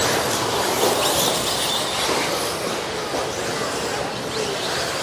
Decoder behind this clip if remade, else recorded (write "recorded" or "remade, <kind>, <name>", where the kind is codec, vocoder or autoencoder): recorded